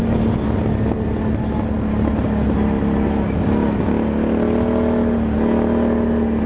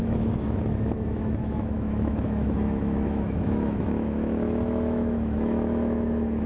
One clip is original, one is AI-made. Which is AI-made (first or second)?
second